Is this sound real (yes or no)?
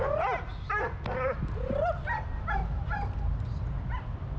yes